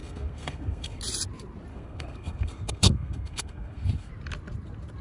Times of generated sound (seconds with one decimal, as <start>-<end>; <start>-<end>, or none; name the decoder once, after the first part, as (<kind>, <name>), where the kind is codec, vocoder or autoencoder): 0.0-1.0 (codec, SNAC); 1.7-4.1